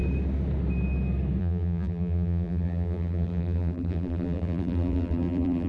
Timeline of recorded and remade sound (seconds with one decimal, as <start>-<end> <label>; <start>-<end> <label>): 0.0-1.4 recorded; 1.4-5.7 remade